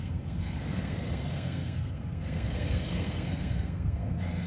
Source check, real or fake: fake